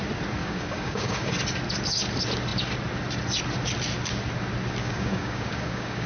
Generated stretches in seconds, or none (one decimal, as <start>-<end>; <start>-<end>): 0.4-1.3; 4.8-6.1